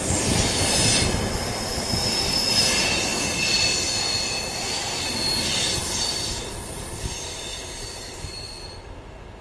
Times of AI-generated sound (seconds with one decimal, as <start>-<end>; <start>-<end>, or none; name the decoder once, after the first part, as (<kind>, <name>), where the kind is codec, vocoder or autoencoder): none